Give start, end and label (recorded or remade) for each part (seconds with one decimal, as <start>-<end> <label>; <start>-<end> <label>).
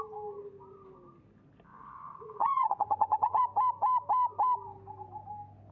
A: 0.0-1.7 recorded; 1.7-3.4 remade; 3.4-5.7 recorded